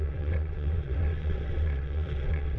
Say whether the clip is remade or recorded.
remade